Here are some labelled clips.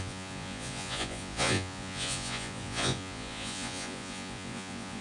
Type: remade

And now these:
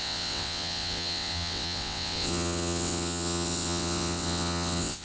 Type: remade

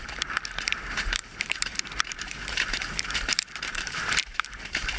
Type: remade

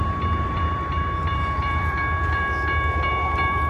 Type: remade